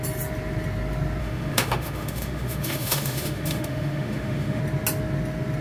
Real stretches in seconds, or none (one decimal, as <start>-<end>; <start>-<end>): 0.0-1.2; 4.6-5.6

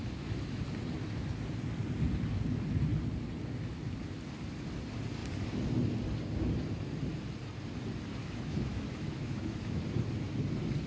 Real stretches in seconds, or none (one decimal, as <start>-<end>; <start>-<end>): 0.6-8.2; 9.8-10.9

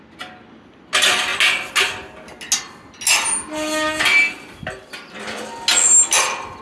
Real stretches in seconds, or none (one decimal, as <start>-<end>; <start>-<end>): 0.0-6.6

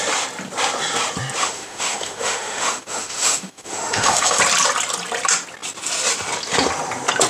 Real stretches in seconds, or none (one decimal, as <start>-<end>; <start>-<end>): 0.0-1.4; 4.4-7.3

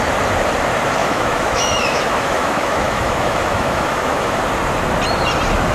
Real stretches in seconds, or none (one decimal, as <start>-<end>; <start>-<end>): 0.0-1.0; 4.4-5.7

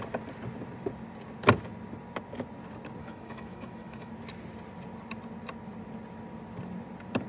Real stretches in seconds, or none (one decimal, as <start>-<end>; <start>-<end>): 0.0-3.0; 4.1-7.3

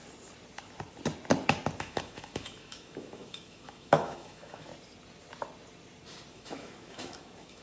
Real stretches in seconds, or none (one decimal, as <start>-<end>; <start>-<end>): 0.0-1.8; 4.7-6.3